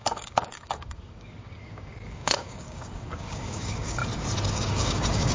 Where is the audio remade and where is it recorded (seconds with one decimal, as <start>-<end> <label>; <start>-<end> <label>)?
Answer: 0.0-4.0 remade; 4.0-4.5 recorded; 4.5-5.3 remade